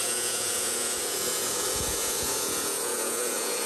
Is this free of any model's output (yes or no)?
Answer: no